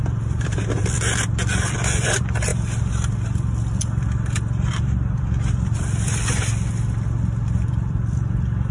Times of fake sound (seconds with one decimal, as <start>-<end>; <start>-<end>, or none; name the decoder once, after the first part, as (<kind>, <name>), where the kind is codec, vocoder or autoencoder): 0.0-2.5 (vocoder, BigVGAN v2); 4.7-8.7